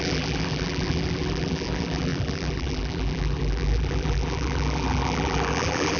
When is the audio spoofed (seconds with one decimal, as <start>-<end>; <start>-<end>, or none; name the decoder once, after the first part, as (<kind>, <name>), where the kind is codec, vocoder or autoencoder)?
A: 0.0-6.0 (vocoder, BigVGAN v2)